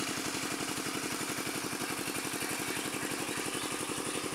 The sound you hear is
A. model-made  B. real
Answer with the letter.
B